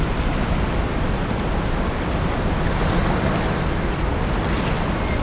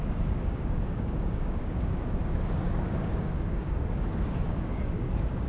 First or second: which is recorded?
first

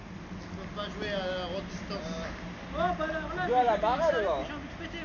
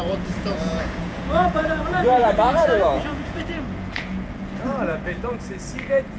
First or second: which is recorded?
first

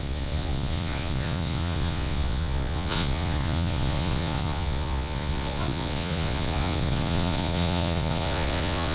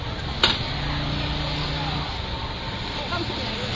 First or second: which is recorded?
second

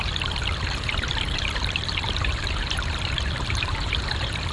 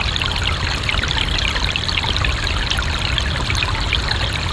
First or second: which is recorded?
second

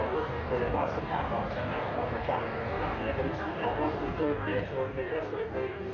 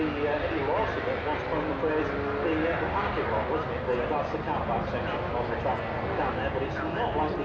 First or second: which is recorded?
second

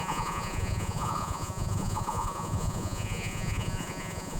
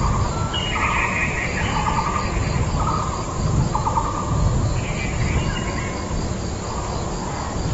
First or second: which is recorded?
second